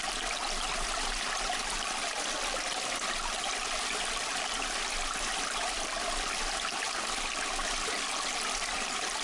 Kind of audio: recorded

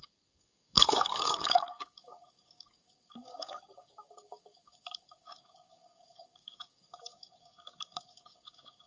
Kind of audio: remade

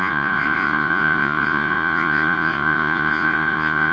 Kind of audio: remade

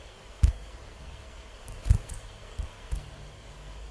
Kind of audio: remade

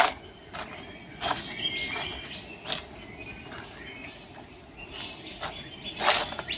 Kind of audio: recorded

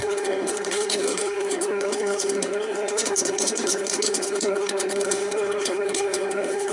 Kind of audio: remade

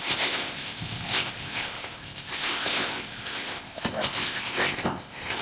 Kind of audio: remade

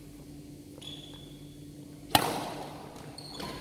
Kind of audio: recorded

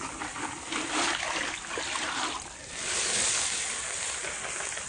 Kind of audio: remade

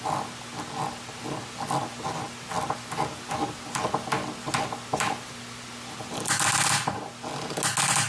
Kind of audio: recorded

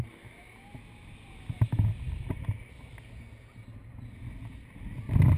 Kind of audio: recorded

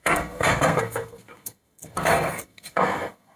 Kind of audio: remade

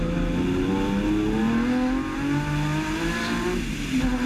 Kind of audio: recorded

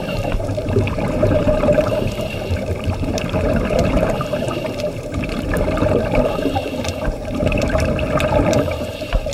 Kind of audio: remade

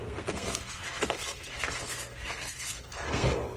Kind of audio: remade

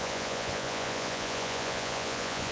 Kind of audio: remade